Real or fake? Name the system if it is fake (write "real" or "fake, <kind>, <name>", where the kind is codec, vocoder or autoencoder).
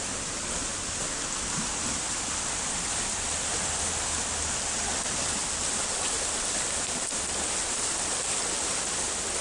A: real